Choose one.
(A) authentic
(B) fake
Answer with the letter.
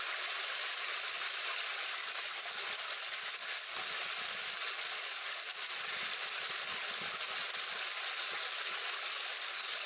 A